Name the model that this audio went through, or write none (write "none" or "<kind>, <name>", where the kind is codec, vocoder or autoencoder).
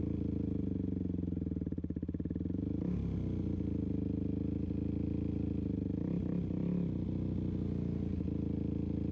none